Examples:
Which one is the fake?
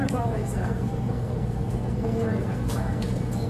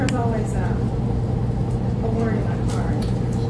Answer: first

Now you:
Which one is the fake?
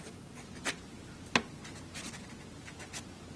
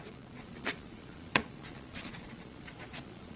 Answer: second